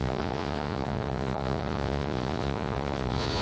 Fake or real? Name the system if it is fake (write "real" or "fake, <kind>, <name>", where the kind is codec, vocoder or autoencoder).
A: fake, vocoder, Vocos